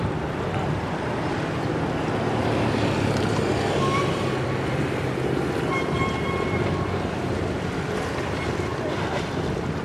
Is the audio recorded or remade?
recorded